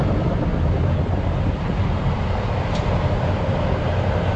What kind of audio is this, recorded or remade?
recorded